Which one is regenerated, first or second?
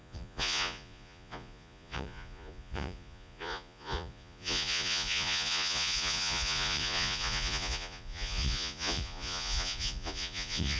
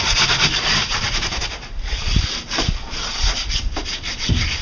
first